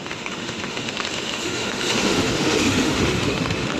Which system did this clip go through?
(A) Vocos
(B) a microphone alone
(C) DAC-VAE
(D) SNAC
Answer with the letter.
C